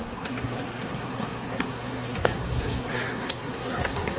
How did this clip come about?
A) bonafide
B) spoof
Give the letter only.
B